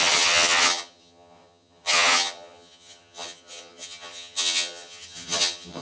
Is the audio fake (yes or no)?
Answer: yes